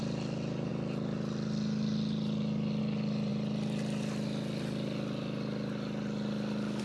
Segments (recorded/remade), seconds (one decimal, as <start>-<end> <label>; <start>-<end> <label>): 0.0-6.8 recorded